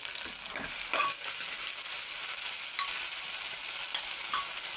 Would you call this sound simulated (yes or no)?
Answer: no